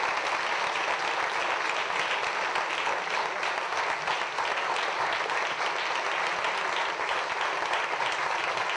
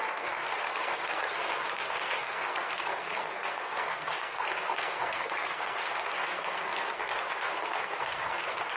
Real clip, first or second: first